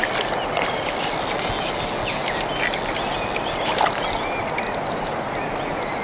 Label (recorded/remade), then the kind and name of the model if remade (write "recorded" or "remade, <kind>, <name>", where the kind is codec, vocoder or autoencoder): recorded